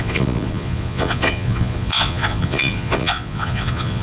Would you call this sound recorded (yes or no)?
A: no